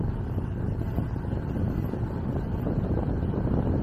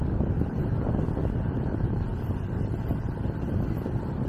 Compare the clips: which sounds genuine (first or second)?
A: first